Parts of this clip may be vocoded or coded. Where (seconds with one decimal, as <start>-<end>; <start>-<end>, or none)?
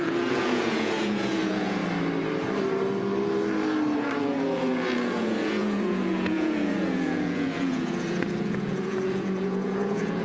0.0-1.8; 4.2-10.2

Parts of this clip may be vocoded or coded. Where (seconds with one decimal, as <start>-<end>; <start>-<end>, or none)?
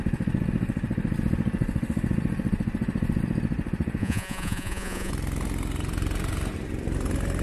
4.0-5.1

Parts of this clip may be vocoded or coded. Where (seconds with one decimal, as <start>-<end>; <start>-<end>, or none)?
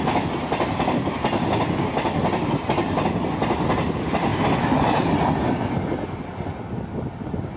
none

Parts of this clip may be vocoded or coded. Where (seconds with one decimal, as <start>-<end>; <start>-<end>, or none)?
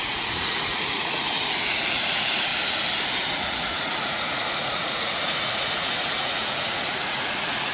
0.0-2.5; 3.3-7.7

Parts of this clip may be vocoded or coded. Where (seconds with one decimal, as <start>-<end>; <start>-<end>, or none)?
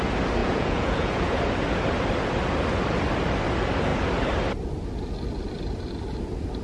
0.4-1.4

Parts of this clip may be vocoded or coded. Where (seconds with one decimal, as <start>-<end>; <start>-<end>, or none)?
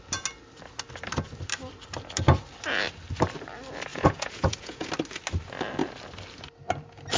3.9-4.9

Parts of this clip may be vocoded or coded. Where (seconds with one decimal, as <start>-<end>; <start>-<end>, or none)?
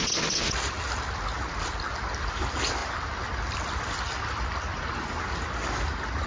none